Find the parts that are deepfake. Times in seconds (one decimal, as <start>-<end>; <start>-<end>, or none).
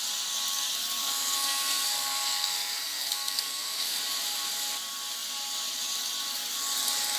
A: 1.0-4.0